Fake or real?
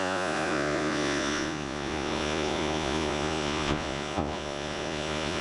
fake